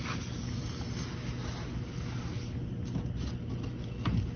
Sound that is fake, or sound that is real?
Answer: real